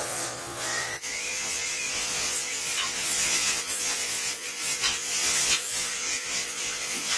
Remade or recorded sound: remade